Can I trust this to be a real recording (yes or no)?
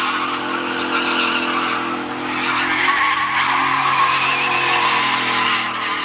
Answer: yes